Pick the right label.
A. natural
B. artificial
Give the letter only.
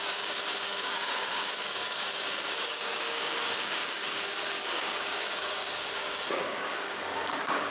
B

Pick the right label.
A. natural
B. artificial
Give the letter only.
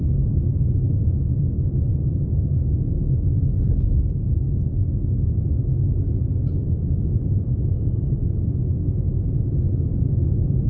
A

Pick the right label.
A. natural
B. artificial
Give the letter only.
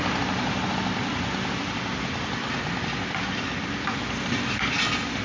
A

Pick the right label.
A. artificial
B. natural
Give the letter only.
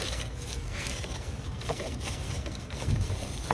A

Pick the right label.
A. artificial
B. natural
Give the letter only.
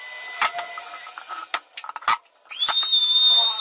B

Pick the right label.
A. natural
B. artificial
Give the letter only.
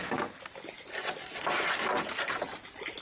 A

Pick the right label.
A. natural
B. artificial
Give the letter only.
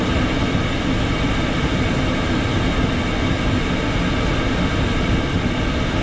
A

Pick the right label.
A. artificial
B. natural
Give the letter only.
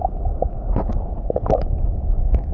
B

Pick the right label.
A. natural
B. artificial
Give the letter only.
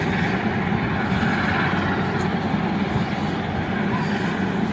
A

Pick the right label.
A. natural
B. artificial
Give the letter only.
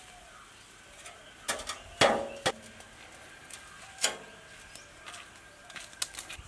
A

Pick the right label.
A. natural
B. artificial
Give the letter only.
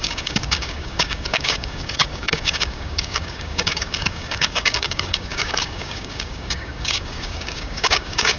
B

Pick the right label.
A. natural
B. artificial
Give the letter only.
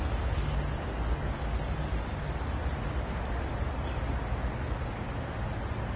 A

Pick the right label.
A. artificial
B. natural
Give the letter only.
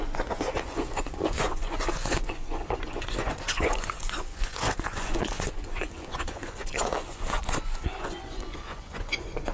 A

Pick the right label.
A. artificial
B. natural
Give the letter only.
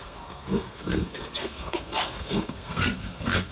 A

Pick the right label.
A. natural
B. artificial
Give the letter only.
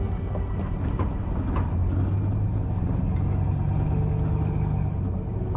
A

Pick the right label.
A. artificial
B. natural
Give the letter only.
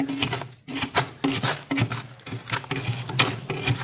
B